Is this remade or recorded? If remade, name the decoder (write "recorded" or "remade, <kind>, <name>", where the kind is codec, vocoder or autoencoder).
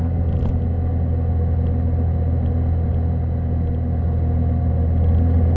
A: recorded